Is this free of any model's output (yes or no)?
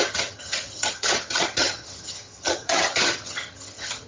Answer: no